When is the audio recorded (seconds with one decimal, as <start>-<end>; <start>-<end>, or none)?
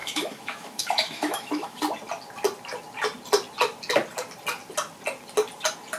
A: 1.8-6.0